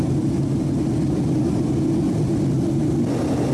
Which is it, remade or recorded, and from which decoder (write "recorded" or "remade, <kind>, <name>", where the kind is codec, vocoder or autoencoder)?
recorded